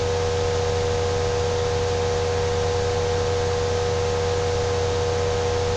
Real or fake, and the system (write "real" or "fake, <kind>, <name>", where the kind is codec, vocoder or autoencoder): real